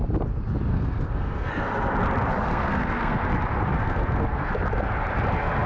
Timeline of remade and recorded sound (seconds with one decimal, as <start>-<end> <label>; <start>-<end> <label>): 0.0-0.7 recorded; 0.7-1.5 remade; 1.5-2.5 recorded; 2.5-3.2 remade; 3.2-3.7 recorded; 3.7-4.5 remade; 4.5-5.7 recorded